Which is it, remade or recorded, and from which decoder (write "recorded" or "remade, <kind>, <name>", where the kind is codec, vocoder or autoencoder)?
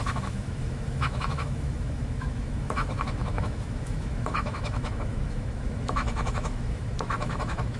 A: remade, autoencoder, DAC-VAE